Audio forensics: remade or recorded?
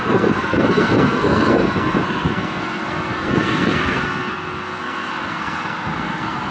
remade